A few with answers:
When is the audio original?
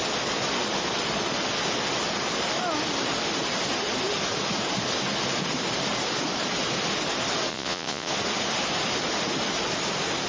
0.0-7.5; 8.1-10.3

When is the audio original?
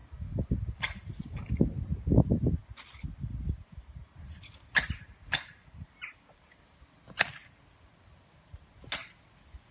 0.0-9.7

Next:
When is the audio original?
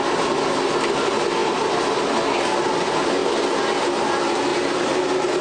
0.0-1.4; 2.0-4.5; 5.0-5.4